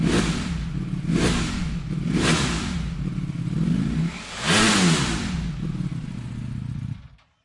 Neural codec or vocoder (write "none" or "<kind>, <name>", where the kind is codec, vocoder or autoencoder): none